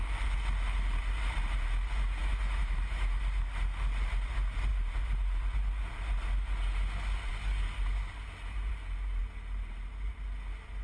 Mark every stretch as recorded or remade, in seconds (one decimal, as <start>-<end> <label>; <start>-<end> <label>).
0.0-2.2 recorded; 2.2-3.2 remade; 3.2-10.8 recorded